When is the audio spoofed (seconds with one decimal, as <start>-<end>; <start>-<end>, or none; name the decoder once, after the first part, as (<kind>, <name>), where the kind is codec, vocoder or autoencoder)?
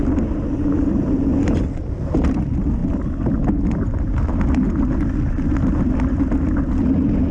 none